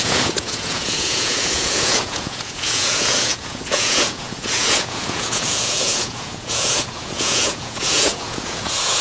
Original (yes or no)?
no